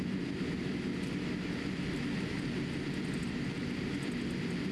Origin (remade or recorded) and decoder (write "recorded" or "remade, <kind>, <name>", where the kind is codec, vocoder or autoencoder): recorded